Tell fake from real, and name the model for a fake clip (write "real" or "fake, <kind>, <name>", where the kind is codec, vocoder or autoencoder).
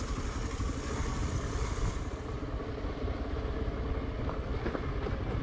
real